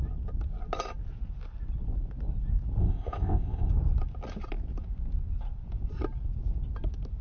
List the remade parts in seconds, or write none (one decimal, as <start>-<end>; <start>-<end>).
2.8-3.7